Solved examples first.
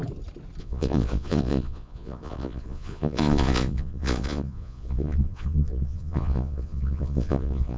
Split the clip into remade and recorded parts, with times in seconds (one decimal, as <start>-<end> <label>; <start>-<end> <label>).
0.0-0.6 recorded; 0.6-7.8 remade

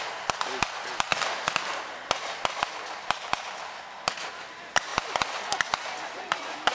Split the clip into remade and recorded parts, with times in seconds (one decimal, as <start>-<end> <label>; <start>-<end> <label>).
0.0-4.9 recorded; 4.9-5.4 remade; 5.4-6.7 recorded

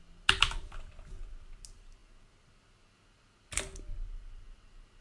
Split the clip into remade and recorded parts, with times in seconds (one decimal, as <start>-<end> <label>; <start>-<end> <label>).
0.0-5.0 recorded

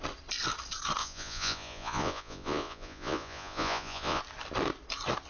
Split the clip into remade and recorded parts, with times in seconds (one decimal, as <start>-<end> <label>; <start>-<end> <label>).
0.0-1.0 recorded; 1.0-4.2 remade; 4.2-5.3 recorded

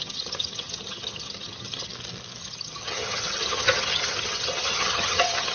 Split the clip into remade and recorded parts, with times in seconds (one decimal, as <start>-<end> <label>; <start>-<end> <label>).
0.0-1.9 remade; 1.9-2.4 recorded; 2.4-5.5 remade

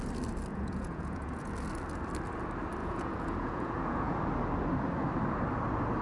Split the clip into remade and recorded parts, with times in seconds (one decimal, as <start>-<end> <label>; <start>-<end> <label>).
0.0-0.5 recorded; 0.5-1.5 remade; 1.5-2.8 recorded; 2.8-4.2 remade; 4.2-6.0 recorded

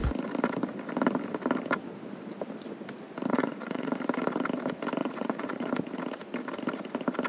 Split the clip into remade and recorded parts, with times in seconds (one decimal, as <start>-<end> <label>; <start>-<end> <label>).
0.0-3.3 recorded; 3.3-3.9 remade; 3.9-5.0 recorded; 5.0-5.7 remade; 5.7-7.3 recorded